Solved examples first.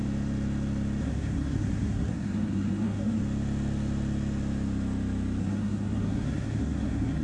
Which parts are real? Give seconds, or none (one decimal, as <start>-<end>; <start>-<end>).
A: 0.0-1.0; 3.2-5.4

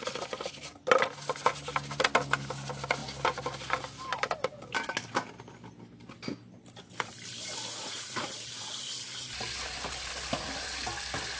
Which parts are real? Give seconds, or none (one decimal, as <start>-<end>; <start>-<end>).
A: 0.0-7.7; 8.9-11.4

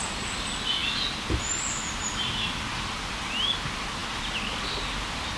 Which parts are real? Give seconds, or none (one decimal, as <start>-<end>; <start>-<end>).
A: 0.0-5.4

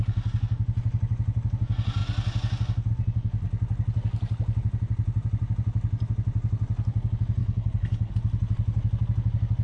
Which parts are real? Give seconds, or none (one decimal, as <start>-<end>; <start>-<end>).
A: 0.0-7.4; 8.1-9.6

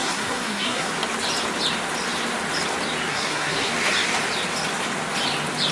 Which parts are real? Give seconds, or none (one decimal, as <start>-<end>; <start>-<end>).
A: 0.9-3.1; 3.7-5.7